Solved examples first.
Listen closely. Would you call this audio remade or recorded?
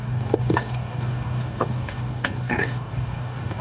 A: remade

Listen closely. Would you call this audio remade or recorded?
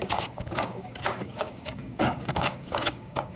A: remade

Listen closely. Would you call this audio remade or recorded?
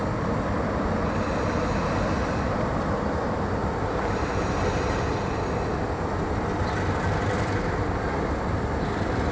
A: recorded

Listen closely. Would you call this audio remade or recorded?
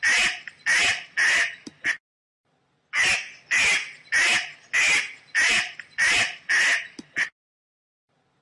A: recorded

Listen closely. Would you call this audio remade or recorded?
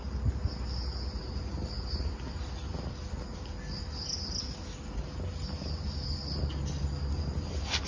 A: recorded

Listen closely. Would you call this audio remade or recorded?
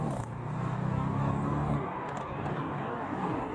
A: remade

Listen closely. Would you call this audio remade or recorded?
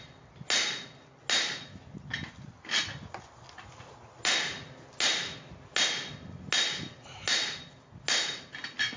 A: recorded